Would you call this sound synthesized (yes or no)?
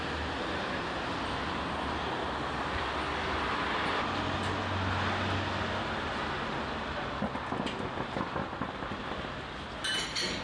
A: no